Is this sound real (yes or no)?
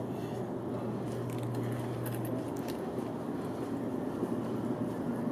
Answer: yes